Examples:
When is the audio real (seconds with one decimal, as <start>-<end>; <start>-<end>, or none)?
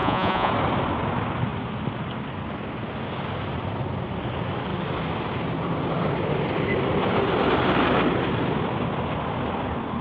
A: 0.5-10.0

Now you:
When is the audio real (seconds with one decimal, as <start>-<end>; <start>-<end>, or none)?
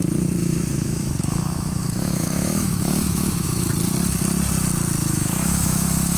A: 0.0-0.4; 3.7-5.0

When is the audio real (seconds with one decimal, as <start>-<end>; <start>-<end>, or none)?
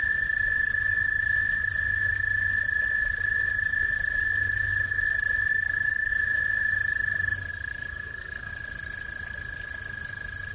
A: 0.0-5.5; 6.1-7.5; 8.5-10.5